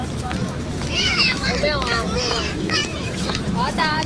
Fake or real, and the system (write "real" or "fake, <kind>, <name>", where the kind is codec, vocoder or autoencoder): fake, autoencoder, DAC-VAE